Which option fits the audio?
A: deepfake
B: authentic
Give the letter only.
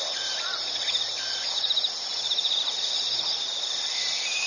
A